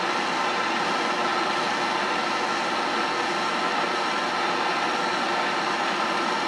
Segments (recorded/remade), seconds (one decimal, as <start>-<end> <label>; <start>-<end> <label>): 0.0-6.5 recorded

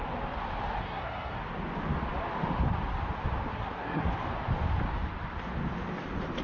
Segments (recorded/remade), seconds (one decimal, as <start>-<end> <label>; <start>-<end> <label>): 0.0-0.8 recorded; 0.8-1.4 remade; 1.4-3.5 recorded; 3.5-4.1 remade; 4.1-6.4 recorded

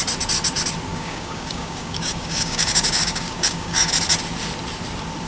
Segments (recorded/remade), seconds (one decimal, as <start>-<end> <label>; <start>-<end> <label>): 0.0-0.9 recorded; 0.9-3.9 remade; 3.9-5.3 recorded

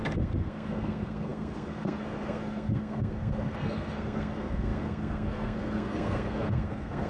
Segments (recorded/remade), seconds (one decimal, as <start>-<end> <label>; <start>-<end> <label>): 0.0-7.1 remade

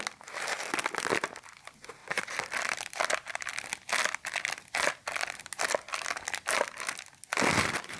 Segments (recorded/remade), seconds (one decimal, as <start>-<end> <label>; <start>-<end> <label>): 0.0-8.0 recorded